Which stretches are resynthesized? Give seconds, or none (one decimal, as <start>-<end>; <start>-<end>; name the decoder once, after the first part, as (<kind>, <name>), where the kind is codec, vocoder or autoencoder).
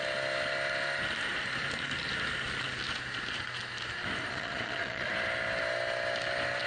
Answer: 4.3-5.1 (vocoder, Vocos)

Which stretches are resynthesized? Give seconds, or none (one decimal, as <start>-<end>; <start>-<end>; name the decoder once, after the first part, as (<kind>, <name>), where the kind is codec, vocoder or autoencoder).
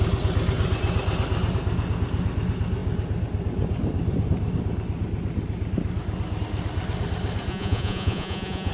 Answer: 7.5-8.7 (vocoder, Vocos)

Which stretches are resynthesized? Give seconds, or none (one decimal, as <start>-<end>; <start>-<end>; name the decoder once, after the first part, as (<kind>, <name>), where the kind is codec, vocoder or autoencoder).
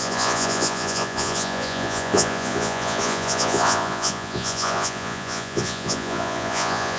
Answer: 0.0-7.0 (vocoder, Vocos)